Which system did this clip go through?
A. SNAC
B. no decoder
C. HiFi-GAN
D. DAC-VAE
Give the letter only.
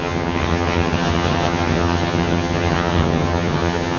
C